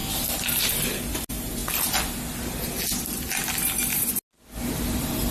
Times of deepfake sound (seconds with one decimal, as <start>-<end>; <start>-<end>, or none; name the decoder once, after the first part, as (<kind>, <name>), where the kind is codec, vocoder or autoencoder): none